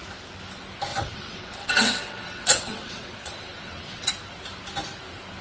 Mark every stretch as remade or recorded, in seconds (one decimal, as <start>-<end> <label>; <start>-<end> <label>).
0.0-0.9 recorded; 0.9-4.1 remade; 4.1-5.4 recorded